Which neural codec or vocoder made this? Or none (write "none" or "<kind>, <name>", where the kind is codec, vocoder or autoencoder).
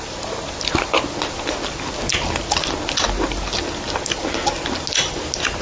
none